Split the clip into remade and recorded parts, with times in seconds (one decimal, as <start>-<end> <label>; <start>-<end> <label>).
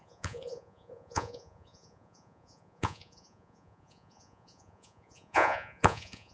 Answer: 0.0-6.3 remade